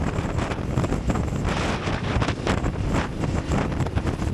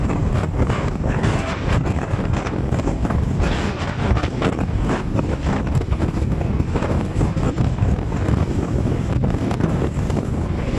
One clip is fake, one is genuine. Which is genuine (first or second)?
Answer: first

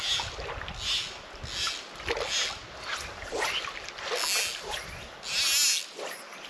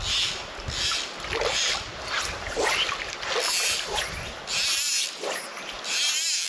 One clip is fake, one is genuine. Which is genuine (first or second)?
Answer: first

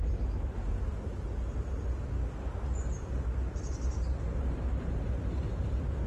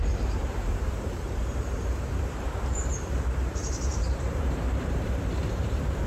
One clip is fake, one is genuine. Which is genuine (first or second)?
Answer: first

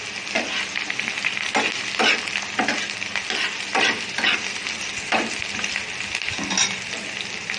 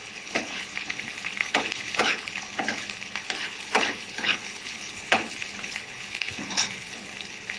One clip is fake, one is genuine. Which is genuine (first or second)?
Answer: first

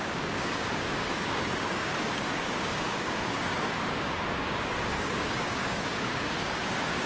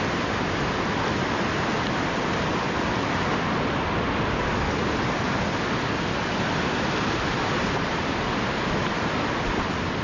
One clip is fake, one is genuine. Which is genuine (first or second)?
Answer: second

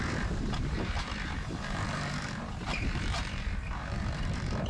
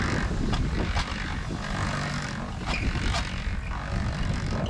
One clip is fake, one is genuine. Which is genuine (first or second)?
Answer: second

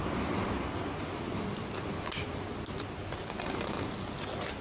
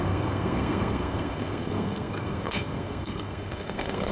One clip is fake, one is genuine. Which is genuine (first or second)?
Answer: first